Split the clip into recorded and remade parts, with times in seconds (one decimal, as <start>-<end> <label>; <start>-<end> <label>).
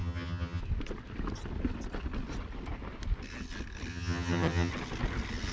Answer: 0.0-0.6 remade; 0.6-3.9 recorded; 3.9-4.7 remade; 4.7-5.5 recorded